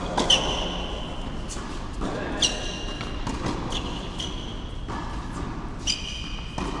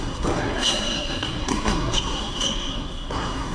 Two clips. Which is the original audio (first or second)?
first